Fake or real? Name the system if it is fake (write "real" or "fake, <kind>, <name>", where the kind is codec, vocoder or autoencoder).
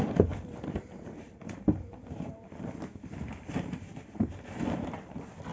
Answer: fake, vocoder, BigVGAN v2